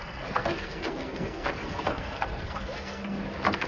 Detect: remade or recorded remade